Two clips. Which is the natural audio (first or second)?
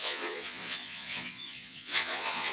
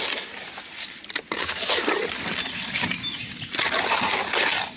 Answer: second